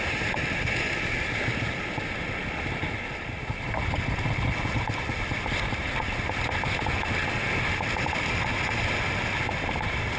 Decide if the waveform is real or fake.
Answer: real